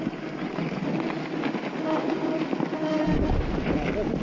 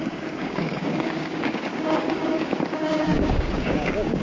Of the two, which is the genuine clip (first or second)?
first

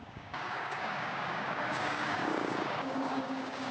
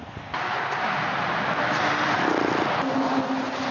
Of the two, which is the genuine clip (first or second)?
second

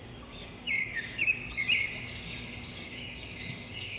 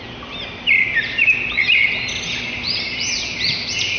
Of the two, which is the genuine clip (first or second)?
second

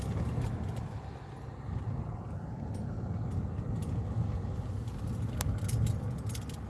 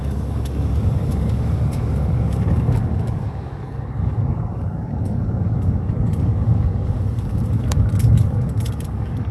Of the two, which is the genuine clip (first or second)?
first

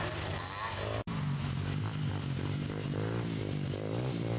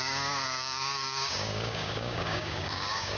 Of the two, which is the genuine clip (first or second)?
first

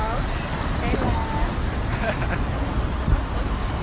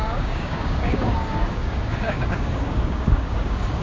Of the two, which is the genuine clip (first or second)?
first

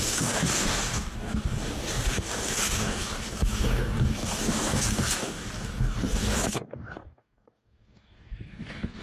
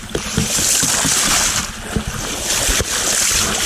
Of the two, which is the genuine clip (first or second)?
second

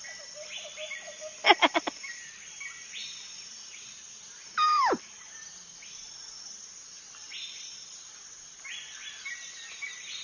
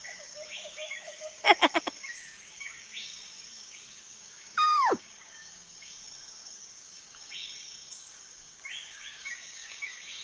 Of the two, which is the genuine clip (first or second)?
first